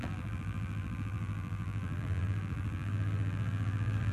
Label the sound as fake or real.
fake